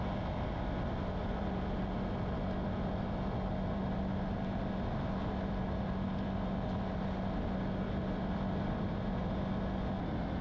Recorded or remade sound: recorded